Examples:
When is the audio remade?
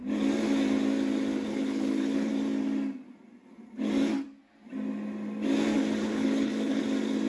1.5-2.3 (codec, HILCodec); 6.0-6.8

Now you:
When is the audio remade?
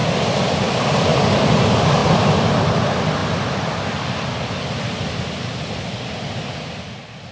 0.0-1.1 (vocoder, BigVGAN v2); 1.6-3.2; 5.6-7.3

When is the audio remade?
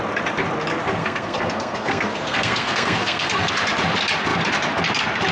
1.0-3.5 (codec, SNAC)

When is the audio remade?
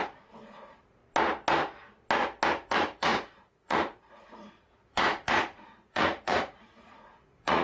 0.0-1.0 (vocoder, Vocos); 2.5-7.6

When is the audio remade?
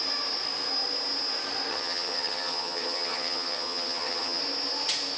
1.7-4.4 (vocoder, HiFi-GAN)